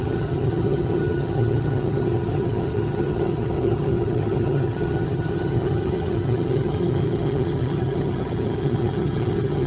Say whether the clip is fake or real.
fake